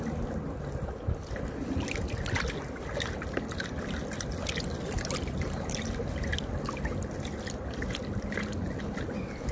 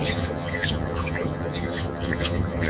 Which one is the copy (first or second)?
second